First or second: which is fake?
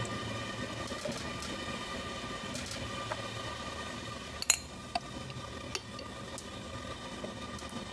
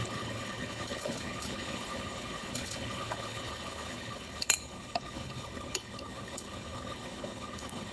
second